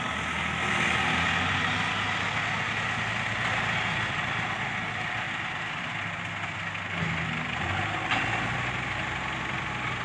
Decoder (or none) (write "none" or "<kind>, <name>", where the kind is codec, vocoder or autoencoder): none